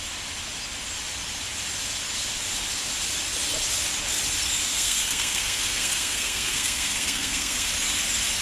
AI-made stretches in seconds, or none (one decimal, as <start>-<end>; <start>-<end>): 4.7-7.7

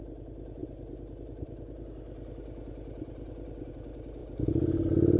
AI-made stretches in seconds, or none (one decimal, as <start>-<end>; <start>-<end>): none

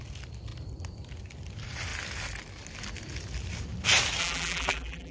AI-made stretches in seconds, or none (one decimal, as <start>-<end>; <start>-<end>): 4.2-5.1

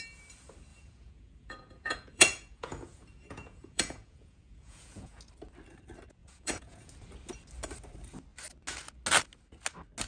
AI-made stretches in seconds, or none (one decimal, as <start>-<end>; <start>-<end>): 0.7-5.2; 6.2-6.9

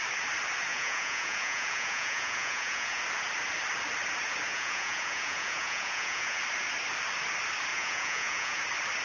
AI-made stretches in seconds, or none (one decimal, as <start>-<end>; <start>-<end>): 0.7-3.0; 4.5-6.4; 7.7-8.6

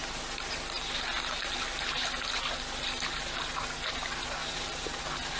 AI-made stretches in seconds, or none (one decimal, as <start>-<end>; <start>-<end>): 4.4-5.0

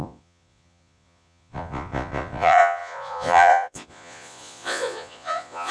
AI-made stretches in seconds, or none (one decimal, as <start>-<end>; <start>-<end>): 0.0-5.7

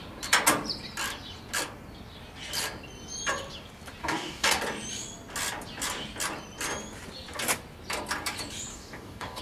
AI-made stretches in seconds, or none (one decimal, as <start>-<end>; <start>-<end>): 4.0-4.6; 8.7-9.4